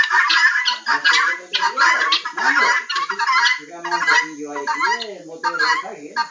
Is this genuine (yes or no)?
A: yes